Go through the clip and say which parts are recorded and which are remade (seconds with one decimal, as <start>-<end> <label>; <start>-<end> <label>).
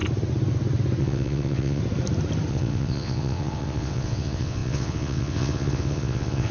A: 0.0-1.0 recorded; 1.0-1.8 remade; 1.8-2.5 recorded; 2.5-6.5 remade